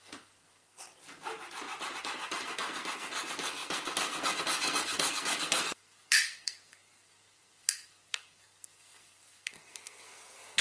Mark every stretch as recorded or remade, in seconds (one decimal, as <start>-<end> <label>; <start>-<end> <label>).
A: 0.0-1.0 remade; 1.0-2.0 recorded; 2.0-10.6 remade